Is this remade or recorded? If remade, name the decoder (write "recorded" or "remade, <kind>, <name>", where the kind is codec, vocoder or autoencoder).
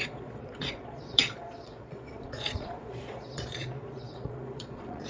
remade, vocoder, Vocos